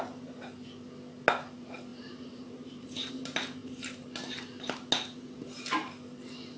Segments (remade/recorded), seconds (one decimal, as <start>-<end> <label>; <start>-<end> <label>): 0.0-1.9 recorded; 1.9-3.1 remade; 3.1-3.6 recorded; 3.6-4.1 remade; 4.1-6.6 recorded